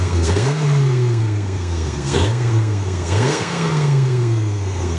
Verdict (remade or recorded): remade